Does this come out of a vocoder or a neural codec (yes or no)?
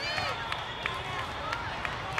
no